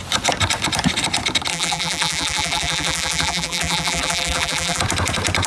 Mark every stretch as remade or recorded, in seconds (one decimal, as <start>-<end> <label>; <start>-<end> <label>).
0.0-1.5 recorded; 1.5-4.8 remade; 4.8-5.5 recorded